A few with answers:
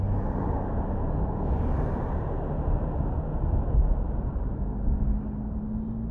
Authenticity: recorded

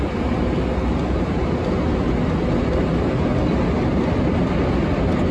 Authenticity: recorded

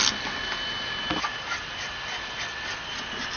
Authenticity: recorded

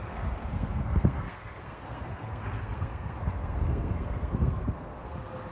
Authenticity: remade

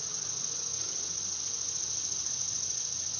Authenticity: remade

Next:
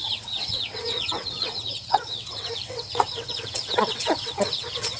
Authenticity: remade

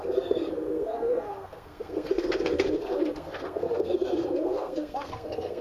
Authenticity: remade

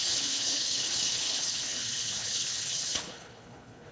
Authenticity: remade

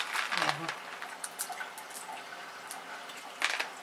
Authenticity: recorded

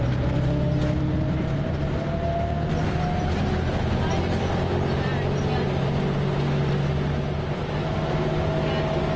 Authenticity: recorded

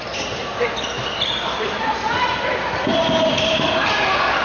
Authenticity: recorded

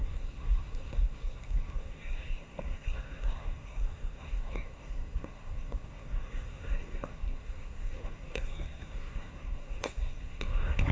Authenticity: remade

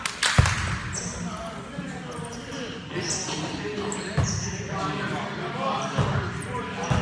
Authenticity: recorded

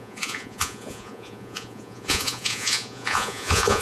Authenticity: remade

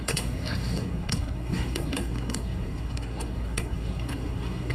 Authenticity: remade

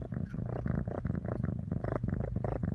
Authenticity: recorded